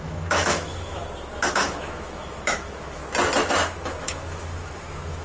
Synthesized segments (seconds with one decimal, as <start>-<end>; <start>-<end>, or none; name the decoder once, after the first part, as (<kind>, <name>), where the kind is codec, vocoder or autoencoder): 0.0-1.0 (autoencoder, DAC-VAE); 1.5-3.0; 3.5-5.2